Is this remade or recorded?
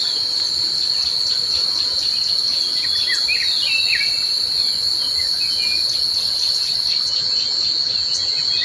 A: recorded